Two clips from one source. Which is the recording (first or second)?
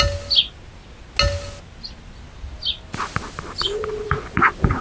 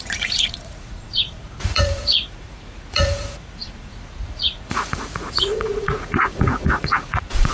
first